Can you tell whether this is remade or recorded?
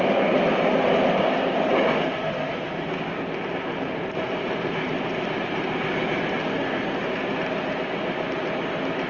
recorded